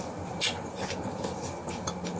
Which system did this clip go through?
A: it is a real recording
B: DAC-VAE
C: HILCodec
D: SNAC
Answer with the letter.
A